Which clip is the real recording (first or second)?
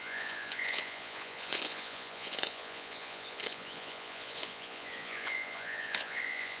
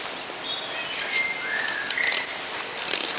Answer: second